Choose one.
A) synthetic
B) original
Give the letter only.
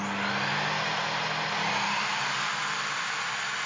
B